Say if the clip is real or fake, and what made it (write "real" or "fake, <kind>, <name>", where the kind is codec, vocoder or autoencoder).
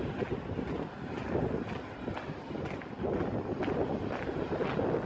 real